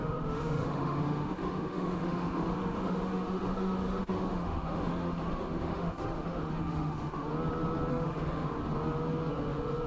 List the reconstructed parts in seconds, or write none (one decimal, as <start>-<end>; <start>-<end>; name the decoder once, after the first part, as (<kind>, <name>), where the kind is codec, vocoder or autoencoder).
0.0-7.3 (autoencoder, DAC-VAE); 7.9-8.6; 9.3-9.9